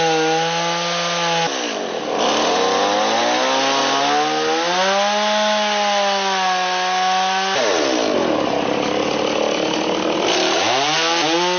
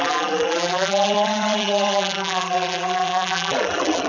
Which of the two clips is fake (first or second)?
second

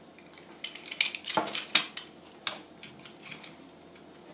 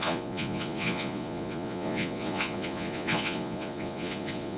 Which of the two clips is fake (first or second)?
second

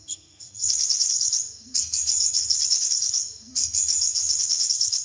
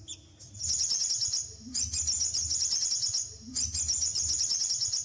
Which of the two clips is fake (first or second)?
first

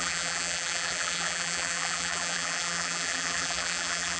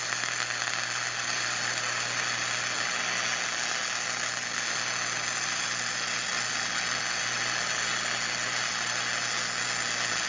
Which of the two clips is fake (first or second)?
first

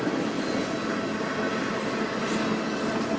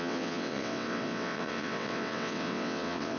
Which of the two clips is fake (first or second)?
second